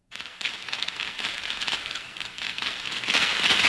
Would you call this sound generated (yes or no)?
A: yes